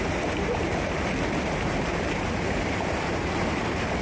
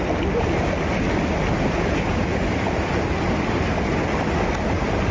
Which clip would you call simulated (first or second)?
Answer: first